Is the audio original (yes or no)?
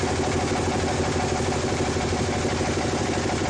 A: yes